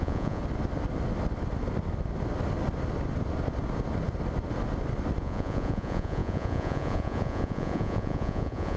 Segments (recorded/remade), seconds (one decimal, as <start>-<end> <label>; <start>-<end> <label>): 0.0-0.4 remade; 0.4-5.2 recorded; 5.2-8.8 remade